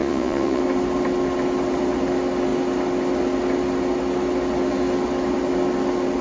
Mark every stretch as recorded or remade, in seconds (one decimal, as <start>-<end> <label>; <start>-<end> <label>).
0.0-0.6 remade; 0.6-6.2 recorded

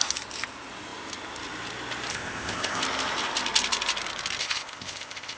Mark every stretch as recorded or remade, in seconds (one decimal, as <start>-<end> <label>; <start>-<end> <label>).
0.0-2.1 recorded; 2.1-2.8 remade; 2.8-4.4 recorded; 4.4-5.4 remade

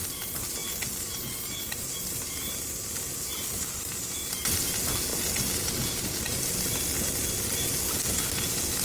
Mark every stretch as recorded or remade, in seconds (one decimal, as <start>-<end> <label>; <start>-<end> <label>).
0.0-8.8 recorded

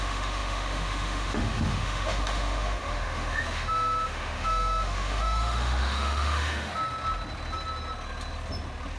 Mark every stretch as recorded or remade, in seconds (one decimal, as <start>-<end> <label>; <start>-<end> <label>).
0.0-6.7 remade; 6.7-9.0 recorded

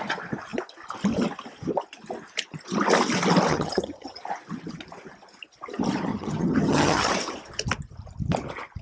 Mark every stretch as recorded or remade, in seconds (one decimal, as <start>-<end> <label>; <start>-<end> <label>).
0.0-3.5 recorded; 3.5-4.2 remade; 4.2-6.1 recorded; 6.1-7.1 remade; 7.1-8.8 recorded

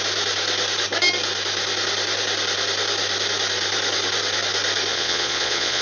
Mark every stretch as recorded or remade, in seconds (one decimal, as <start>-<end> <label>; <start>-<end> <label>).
0.0-4.9 recorded; 4.9-5.8 remade